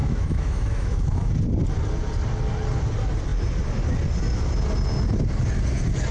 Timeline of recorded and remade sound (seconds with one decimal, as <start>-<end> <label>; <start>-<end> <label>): 0.0-1.3 remade; 1.3-6.1 recorded